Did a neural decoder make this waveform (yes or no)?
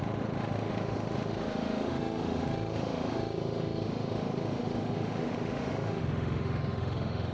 yes